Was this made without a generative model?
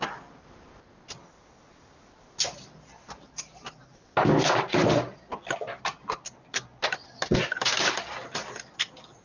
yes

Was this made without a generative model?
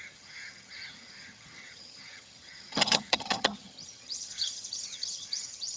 no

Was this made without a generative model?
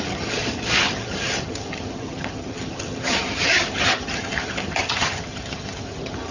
no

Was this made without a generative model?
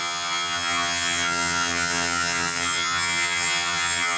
no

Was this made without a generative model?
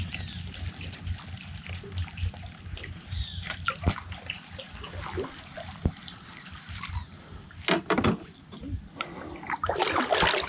yes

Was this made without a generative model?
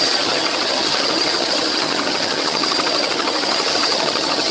no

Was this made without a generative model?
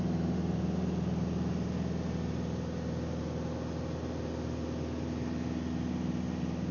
yes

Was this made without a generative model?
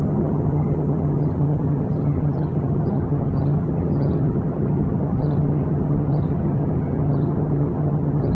no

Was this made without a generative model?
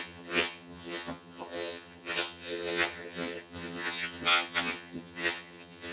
no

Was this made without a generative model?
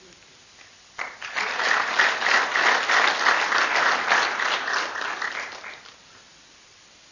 yes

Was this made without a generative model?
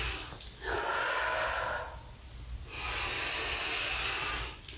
yes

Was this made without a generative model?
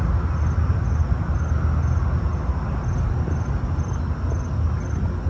yes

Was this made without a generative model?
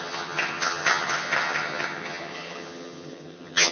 no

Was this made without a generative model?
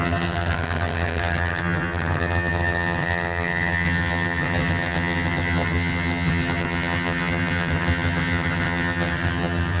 no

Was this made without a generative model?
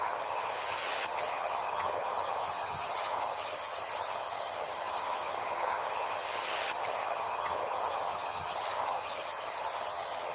no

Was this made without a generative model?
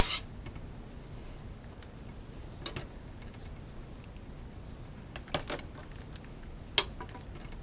yes